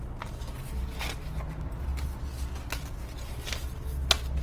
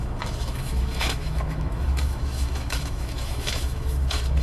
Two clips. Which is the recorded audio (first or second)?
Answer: first